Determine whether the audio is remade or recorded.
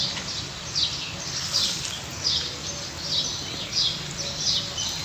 recorded